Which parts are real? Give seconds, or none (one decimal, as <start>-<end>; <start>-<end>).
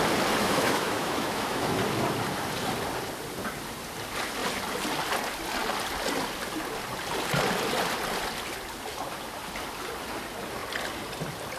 0.0-0.4; 1.8-11.6